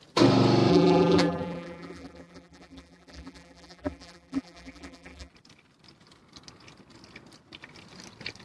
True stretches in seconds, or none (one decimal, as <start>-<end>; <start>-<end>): 0.0-0.7; 5.3-8.4